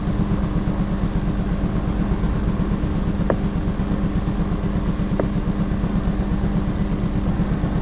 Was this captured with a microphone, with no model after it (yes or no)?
yes